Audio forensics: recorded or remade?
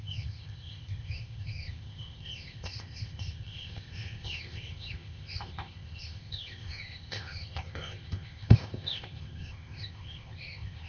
remade